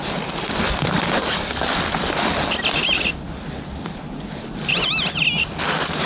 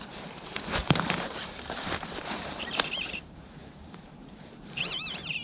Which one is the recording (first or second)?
first